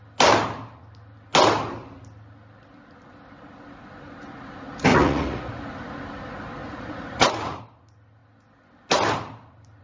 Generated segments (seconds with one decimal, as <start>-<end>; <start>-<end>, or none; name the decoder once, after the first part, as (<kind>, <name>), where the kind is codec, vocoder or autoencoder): 4.9-5.6 (vocoder, Vocos); 6.6-7.6